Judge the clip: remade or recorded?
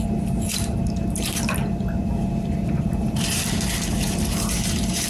remade